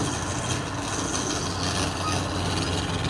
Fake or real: real